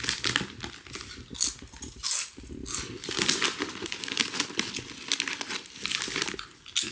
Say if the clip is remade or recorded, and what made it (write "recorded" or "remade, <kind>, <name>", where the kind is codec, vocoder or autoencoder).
recorded